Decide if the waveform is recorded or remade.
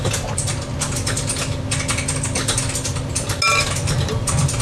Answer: recorded